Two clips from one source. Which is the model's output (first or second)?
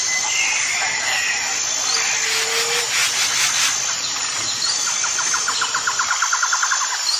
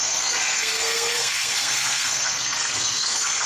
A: second